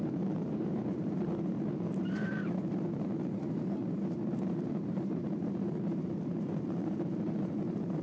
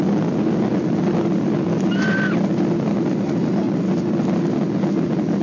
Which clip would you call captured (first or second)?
second